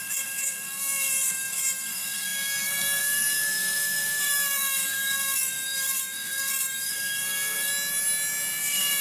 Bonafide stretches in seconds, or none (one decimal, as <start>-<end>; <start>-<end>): 7.7-8.6